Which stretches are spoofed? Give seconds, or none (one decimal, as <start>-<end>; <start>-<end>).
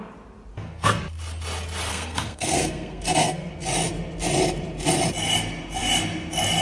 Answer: 0.5-1.0; 1.9-3.5